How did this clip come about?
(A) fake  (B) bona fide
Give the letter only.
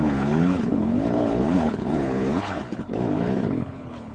A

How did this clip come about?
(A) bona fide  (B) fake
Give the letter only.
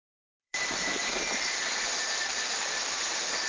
B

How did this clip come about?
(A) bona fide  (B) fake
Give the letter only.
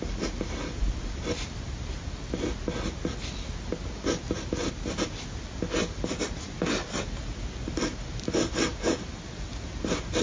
A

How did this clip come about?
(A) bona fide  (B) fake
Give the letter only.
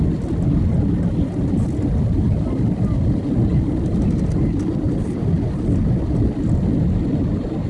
A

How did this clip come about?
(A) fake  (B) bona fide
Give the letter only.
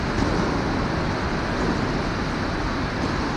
B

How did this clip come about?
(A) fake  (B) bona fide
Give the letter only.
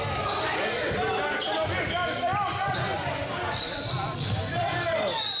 B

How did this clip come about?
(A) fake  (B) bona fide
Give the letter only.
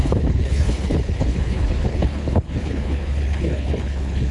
A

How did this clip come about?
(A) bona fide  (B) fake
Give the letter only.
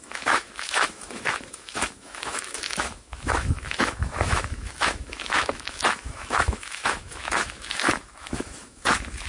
B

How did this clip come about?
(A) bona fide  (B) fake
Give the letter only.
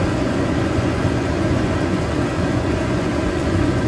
B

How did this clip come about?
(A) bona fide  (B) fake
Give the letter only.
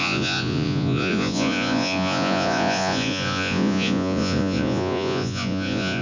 B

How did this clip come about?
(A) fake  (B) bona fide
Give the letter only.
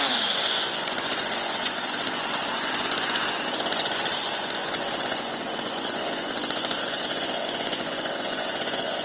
A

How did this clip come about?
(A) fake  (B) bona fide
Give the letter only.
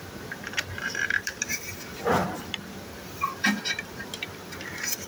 A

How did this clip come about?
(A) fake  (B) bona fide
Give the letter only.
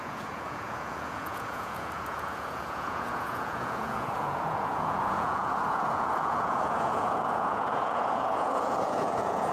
A